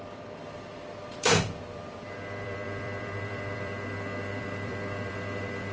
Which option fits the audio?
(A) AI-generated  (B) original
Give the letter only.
A